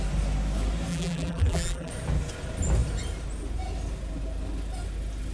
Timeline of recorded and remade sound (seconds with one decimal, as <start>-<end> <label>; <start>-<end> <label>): 0.0-0.9 recorded; 0.9-1.9 remade; 1.9-5.3 recorded